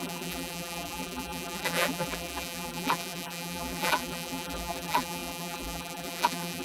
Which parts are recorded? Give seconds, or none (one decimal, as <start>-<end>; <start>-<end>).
none